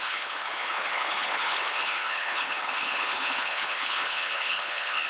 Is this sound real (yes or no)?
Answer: no